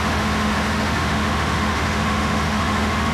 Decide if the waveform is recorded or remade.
remade